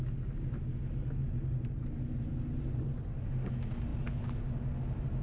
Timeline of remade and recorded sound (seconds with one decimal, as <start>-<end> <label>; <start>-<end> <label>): 0.0-5.2 recorded